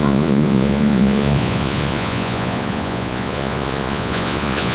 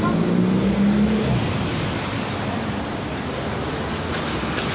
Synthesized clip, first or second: first